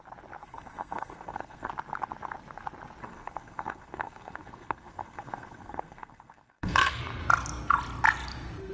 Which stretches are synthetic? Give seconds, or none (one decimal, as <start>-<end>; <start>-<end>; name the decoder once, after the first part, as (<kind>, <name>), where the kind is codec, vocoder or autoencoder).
0.4-1.7 (codec, SNAC); 3.0-7.0